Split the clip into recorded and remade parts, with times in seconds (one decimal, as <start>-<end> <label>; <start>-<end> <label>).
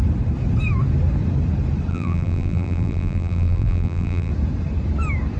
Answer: 0.0-1.9 recorded; 1.9-4.3 remade; 4.3-5.4 recorded